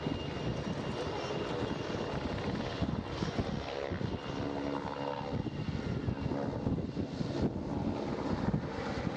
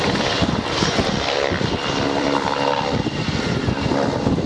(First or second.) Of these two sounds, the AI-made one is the second